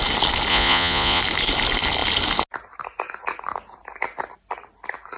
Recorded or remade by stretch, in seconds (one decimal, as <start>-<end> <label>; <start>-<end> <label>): 0.0-0.5 recorded; 0.5-1.2 remade; 1.2-5.2 recorded